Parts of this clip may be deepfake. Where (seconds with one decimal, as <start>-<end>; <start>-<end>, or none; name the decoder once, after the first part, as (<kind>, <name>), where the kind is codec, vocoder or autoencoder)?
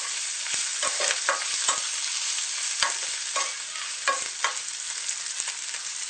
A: none